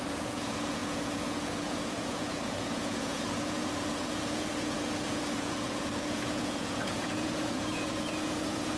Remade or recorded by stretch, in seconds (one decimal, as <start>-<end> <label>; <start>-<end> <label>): 0.0-8.8 remade